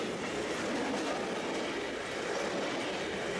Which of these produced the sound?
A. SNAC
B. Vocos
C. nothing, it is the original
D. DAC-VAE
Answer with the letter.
C